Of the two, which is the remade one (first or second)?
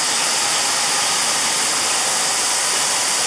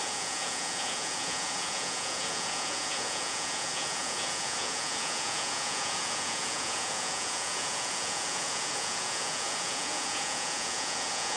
second